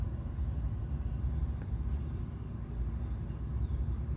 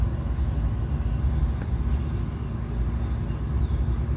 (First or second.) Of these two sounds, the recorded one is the second